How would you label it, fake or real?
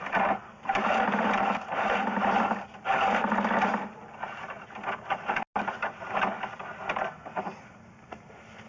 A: real